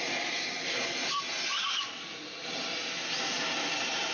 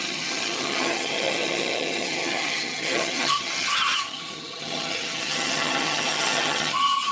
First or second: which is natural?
first